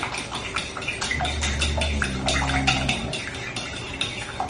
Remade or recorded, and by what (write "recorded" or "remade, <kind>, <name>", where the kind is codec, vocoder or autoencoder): recorded